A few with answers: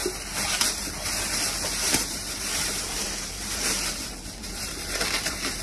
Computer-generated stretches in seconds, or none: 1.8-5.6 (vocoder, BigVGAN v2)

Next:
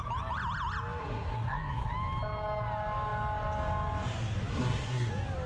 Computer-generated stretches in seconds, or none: 1.0-1.9 (codec, SNAC); 4.5-5.1